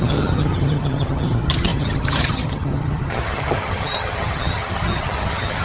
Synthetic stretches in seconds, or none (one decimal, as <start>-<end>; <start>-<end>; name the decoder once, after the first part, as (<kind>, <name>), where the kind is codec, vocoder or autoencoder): 0.0-5.6 (vocoder, HiFi-GAN)